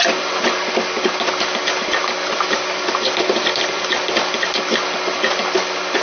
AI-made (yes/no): no